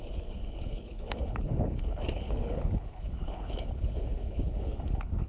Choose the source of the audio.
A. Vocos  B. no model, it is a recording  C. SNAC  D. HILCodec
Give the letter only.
D